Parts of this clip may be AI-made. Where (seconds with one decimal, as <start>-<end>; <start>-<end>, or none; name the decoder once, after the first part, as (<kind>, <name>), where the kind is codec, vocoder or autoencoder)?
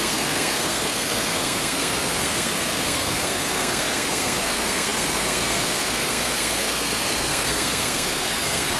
0.0-8.8 (codec, SNAC)